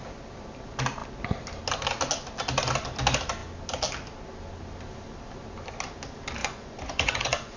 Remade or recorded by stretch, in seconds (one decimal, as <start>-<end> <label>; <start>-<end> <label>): 0.0-6.4 recorded; 6.4-7.6 remade